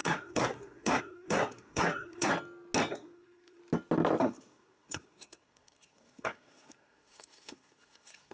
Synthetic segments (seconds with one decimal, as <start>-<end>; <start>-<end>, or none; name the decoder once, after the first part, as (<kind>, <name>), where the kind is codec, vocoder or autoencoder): 0.0-2.3 (codec, SNAC); 2.9-3.6; 4.2-8.3